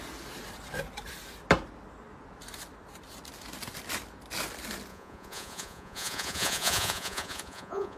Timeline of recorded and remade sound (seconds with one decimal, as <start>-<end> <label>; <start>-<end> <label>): 0.0-4.9 recorded; 4.9-8.0 remade